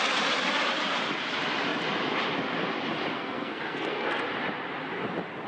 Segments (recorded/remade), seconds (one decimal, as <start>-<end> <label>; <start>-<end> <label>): 0.0-3.1 recorded; 3.1-4.2 remade; 4.2-5.5 recorded